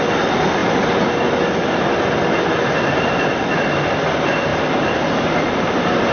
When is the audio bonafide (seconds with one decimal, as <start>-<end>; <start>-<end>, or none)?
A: 0.0-4.5; 5.6-6.1